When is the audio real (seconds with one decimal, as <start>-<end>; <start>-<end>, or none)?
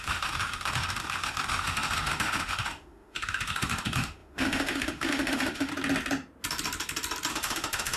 5.7-7.3